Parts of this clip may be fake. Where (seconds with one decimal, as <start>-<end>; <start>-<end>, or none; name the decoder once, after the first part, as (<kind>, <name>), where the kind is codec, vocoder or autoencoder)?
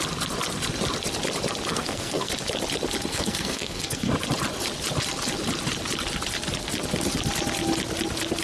1.7-2.3 (codec, SNAC); 3.1-4.1